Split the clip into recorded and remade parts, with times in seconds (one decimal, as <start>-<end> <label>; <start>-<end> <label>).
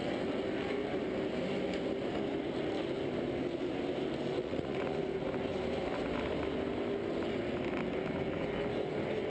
0.0-4.4 recorded; 4.4-5.0 remade; 5.0-9.3 recorded